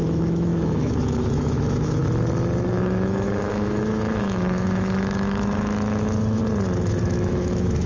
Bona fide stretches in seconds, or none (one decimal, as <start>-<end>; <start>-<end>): 2.0-2.7; 6.4-7.0